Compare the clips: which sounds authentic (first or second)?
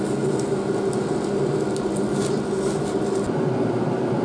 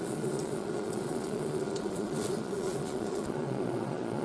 first